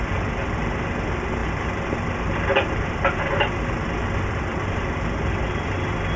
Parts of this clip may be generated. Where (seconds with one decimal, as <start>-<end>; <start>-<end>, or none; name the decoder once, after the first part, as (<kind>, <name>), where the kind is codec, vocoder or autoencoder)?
none